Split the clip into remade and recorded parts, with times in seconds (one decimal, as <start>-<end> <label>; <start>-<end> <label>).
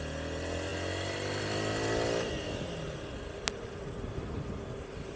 0.0-5.2 recorded